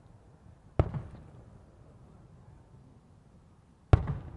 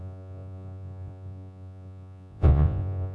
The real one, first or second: first